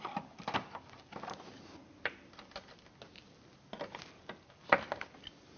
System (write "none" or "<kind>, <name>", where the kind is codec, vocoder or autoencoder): none